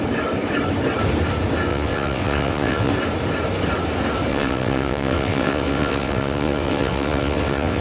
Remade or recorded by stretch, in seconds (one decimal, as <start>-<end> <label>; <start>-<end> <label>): 0.0-1.7 recorded; 1.7-2.9 remade; 2.9-4.3 recorded; 4.3-7.8 remade